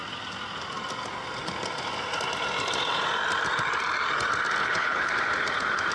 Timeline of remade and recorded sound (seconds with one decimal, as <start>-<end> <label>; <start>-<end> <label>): 0.0-4.6 recorded; 4.6-5.1 remade; 5.1-5.9 recorded